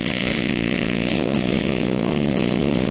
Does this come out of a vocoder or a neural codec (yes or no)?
yes